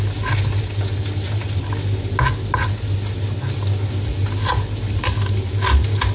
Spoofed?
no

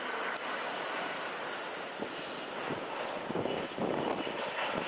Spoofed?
no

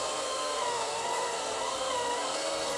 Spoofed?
yes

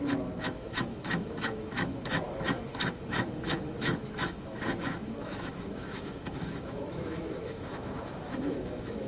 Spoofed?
yes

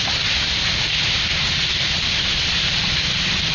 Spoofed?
no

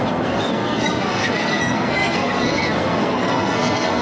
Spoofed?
yes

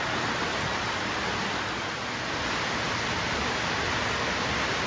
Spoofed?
no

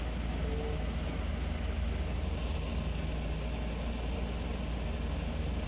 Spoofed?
no